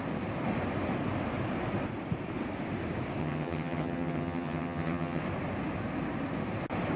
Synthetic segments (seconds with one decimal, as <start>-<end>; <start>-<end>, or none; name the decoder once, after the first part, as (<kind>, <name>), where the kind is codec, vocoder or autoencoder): 3.2-5.2 (vocoder, HiFi-GAN)